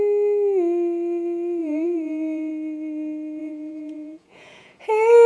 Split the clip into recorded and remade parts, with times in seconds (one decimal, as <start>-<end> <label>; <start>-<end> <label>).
0.0-1.6 recorded; 1.6-2.5 remade; 2.5-3.4 recorded; 3.4-4.8 remade; 4.8-5.3 recorded